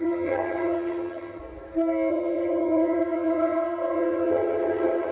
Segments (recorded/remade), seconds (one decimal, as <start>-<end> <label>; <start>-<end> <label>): 0.0-1.4 remade; 1.4-2.1 recorded; 2.1-5.1 remade